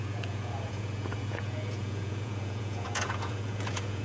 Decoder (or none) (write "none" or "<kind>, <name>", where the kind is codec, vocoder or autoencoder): vocoder, Vocos